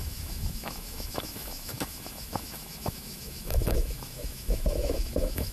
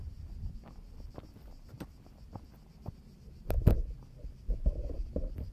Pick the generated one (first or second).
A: first